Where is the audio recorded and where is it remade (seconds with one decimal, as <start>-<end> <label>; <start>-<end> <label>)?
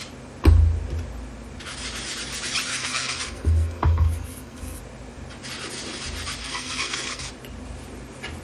0.0-2.7 recorded; 2.7-4.8 remade; 4.8-6.4 recorded; 6.4-7.3 remade; 7.3-8.4 recorded